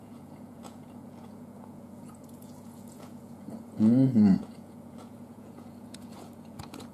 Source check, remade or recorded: remade